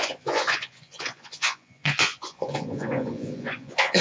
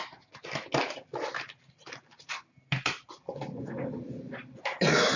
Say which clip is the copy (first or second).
first